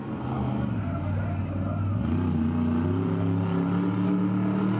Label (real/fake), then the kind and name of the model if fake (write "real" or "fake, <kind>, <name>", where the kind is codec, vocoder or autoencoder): real